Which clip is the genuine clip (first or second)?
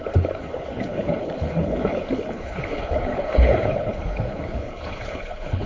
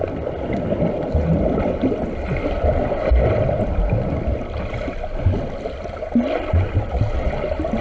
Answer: second